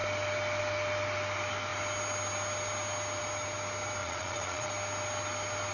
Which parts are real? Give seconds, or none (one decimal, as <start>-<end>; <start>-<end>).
0.0-4.0; 4.7-5.7